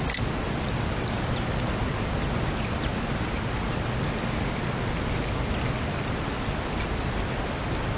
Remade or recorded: recorded